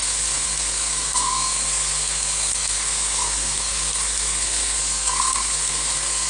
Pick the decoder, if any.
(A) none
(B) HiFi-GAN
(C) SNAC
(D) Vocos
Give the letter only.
C